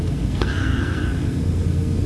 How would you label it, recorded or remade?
remade